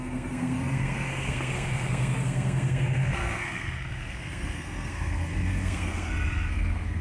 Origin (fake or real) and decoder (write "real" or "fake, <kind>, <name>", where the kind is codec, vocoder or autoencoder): fake, codec, SNAC